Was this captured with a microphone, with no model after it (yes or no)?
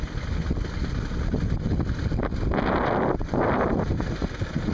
yes